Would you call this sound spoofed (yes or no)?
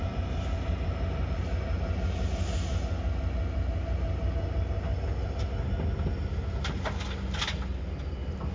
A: no